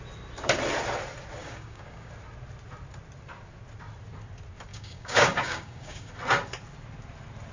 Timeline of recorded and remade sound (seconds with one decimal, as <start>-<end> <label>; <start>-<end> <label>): 0.0-1.4 recorded; 1.4-2.1 remade; 2.1-4.7 recorded; 4.7-6.1 remade; 6.1-7.5 recorded